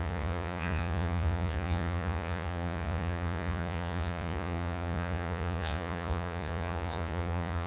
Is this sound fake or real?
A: fake